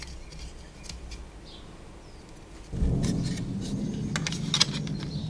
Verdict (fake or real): real